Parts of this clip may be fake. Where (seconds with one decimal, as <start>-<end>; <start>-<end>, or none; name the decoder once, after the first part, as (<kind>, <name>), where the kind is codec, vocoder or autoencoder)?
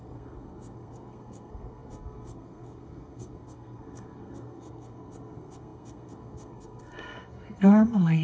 0.0-8.2 (codec, SNAC)